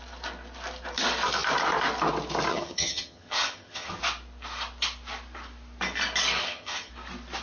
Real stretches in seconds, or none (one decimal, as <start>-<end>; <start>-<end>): 0.0-2.5; 4.0-6.4; 6.9-7.4